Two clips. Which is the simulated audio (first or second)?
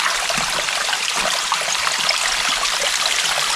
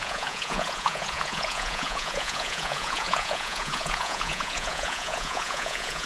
second